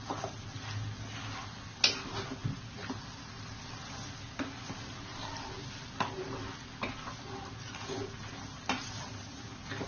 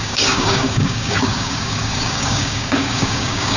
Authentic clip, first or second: first